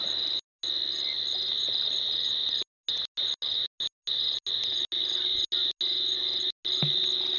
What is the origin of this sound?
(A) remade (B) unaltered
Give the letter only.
B